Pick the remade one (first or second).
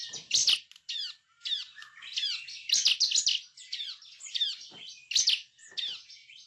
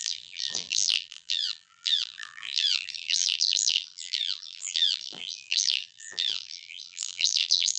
second